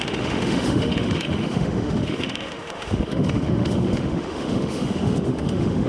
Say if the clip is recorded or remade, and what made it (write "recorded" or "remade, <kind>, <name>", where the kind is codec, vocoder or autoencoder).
remade, autoencoder, DAC-VAE